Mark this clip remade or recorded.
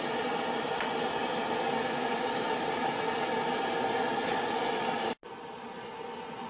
recorded